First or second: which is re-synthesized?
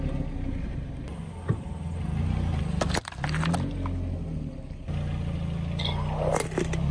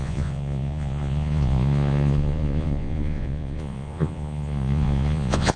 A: second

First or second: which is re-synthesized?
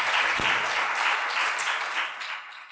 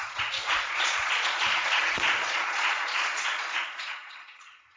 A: second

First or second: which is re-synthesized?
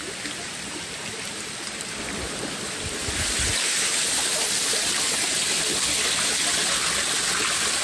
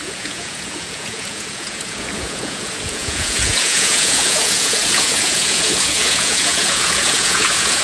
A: second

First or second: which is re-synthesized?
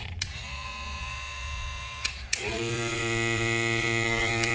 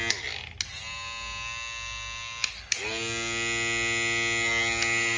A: first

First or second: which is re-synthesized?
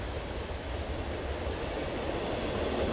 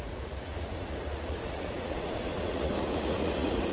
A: second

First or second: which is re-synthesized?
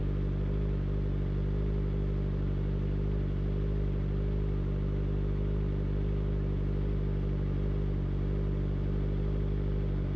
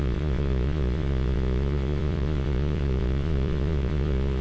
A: second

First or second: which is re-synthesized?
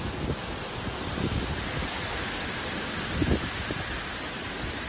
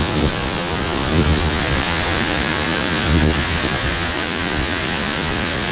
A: second